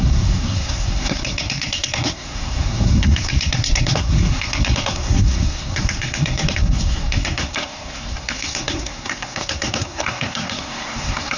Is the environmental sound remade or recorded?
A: remade